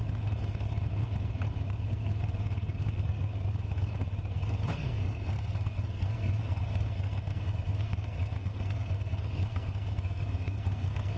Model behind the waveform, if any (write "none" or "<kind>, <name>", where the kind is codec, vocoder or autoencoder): codec, SNAC